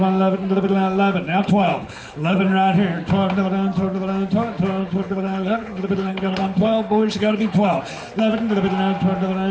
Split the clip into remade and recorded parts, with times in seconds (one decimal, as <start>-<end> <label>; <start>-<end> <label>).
0.0-1.3 recorded; 1.3-2.4 remade; 2.4-4.8 recorded; 4.8-7.8 remade; 7.8-9.5 recorded